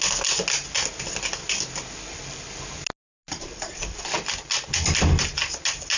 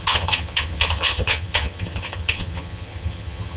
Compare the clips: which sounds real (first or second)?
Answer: first